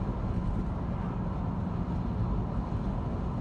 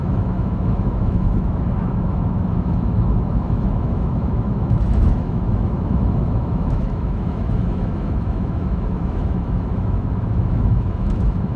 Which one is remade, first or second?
second